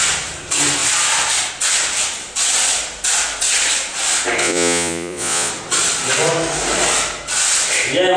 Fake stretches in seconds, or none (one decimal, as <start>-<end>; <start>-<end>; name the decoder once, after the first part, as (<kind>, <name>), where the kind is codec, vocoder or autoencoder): 4.4-5.5 (vocoder, Vocos)